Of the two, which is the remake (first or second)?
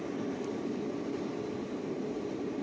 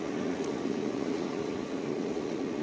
second